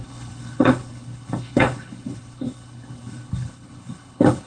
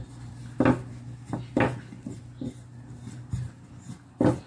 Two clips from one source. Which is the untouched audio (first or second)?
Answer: second